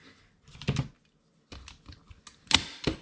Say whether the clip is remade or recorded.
recorded